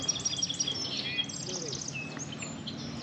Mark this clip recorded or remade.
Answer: recorded